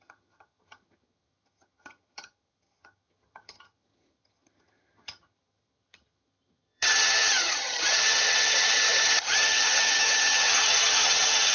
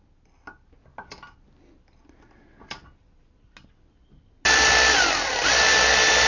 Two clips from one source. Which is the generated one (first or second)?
first